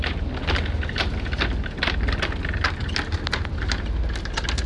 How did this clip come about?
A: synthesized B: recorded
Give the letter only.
B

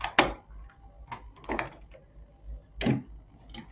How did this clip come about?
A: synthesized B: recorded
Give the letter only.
B